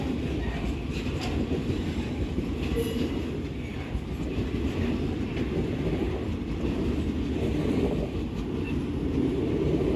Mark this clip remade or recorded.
recorded